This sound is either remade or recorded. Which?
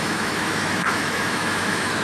remade